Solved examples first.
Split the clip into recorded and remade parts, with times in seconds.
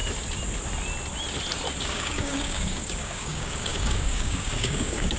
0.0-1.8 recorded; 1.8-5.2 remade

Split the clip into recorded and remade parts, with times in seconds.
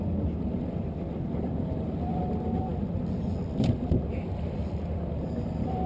0.0-5.9 recorded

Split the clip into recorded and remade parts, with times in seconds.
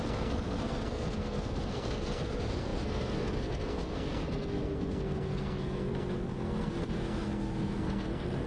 0.0-8.5 remade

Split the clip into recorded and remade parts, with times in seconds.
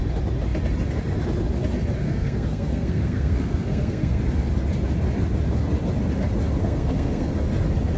0.0-2.0 recorded; 2.0-4.2 remade; 4.2-6.6 recorded; 6.6-7.3 remade; 7.3-8.0 recorded